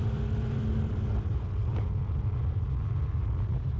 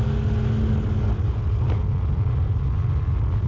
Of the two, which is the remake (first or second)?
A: first